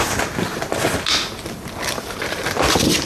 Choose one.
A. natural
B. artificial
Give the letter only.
A